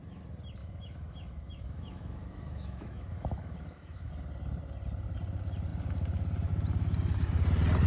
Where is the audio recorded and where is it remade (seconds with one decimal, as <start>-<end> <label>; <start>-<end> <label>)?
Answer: 0.0-0.6 recorded; 0.6-4.1 remade; 4.1-7.9 recorded